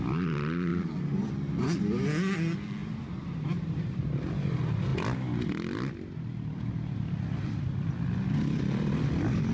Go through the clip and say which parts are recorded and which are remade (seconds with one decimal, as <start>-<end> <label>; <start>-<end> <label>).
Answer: 0.0-2.8 recorded; 2.8-4.0 remade; 4.0-9.5 recorded